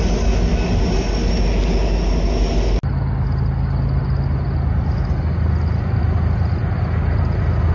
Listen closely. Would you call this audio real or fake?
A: real